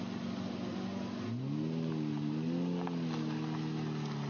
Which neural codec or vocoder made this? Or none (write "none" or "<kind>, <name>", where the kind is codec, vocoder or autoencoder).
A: none